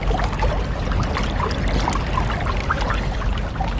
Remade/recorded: recorded